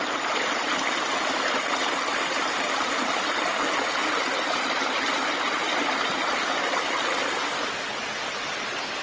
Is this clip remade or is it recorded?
recorded